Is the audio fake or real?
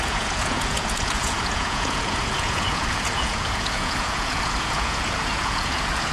fake